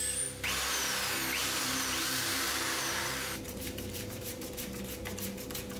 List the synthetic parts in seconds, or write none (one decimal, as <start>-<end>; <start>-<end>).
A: 1.4-4.8